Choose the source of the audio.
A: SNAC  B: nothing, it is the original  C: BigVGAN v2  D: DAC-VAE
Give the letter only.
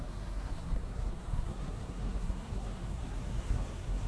A